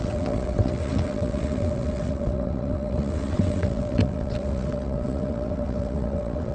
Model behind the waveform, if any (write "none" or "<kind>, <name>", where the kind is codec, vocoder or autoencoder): vocoder, WaveNeXt